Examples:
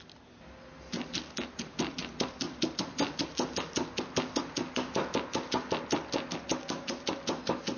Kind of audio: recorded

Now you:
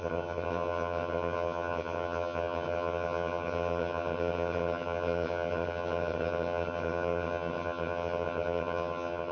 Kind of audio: remade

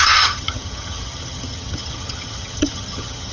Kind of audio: remade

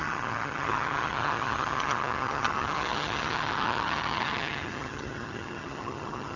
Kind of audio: remade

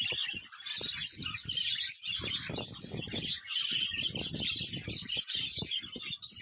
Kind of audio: recorded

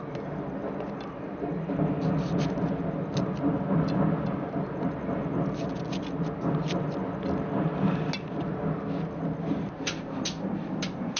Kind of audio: recorded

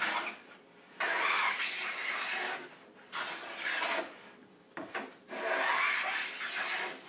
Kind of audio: recorded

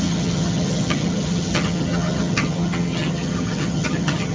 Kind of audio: remade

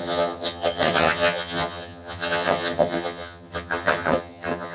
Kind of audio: remade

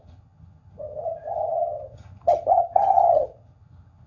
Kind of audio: remade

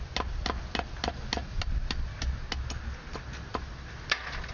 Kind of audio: recorded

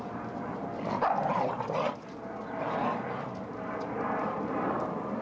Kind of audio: recorded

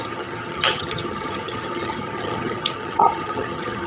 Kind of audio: remade